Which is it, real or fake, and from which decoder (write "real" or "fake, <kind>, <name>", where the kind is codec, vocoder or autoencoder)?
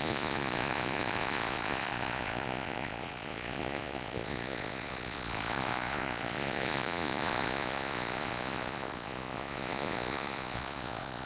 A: fake, vocoder, Vocos